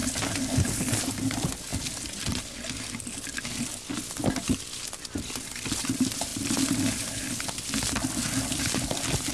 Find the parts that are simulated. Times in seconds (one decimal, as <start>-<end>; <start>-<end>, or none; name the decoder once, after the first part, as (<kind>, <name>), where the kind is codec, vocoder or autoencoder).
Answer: none